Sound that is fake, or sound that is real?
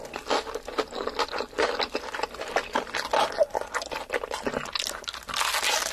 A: real